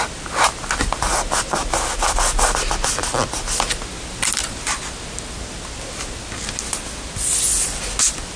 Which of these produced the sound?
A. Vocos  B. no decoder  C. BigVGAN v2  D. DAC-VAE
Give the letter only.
B